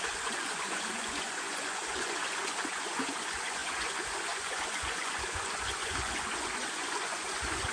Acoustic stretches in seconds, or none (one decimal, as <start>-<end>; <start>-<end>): none